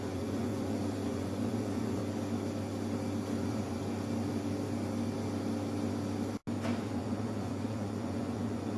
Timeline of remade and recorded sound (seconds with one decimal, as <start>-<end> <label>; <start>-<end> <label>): 0.0-2.0 remade; 2.0-3.4 recorded; 3.4-3.8 remade; 3.8-6.8 recorded; 6.8-8.8 remade